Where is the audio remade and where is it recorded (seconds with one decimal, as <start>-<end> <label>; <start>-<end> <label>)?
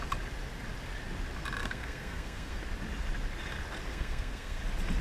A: 0.0-1.6 recorded; 1.6-2.6 remade; 2.6-3.9 recorded; 3.9-4.6 remade; 4.6-5.0 recorded